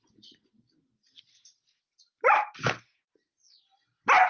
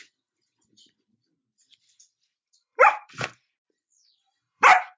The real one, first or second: first